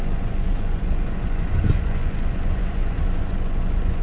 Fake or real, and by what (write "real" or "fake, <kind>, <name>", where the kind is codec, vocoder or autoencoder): fake, vocoder, Vocos